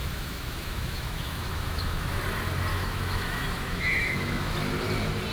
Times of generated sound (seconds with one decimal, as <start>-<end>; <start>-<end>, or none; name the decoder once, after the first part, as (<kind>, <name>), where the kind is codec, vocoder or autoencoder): 0.0-2.2 (autoencoder, DAC-VAE); 2.7-4.5